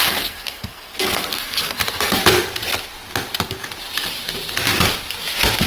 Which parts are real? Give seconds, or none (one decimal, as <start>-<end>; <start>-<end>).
2.2-5.7